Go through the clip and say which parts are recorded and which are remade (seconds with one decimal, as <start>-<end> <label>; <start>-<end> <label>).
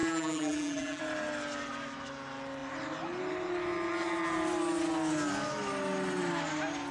0.0-1.0 remade; 1.0-6.9 recorded